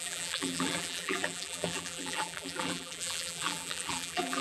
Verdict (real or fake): fake